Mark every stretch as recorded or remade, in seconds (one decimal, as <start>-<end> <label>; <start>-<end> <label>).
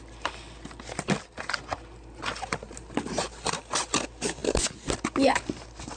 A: 0.0-6.0 recorded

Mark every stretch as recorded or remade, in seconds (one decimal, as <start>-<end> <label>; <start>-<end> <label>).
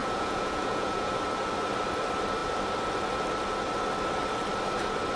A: 0.0-1.1 remade; 1.1-5.2 recorded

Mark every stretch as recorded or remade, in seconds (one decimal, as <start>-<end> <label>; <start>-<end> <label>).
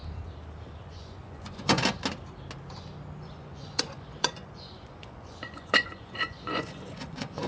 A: 0.0-0.8 recorded; 0.8-1.8 remade; 1.8-3.2 recorded; 3.2-7.5 remade